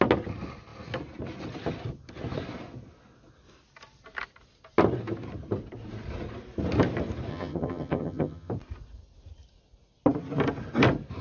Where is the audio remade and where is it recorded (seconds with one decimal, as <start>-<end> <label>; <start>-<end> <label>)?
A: 0.0-7.3 recorded; 7.3-8.5 remade; 8.5-11.2 recorded